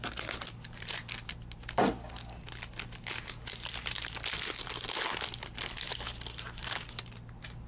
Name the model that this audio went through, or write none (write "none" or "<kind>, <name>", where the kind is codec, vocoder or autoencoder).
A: none